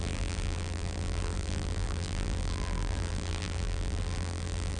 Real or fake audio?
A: fake